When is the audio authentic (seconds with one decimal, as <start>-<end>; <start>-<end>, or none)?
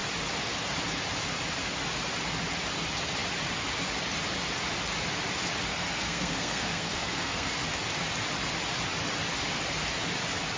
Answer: 0.0-5.7; 7.5-10.6